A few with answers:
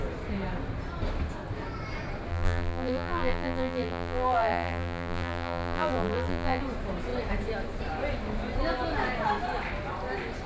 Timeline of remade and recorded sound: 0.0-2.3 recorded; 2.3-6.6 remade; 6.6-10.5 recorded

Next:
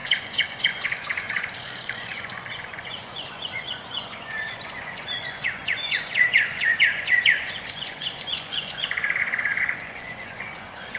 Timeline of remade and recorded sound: 0.0-11.0 remade

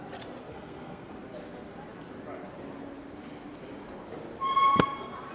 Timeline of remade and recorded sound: 0.0-0.5 recorded; 0.5-1.1 remade; 1.1-5.3 recorded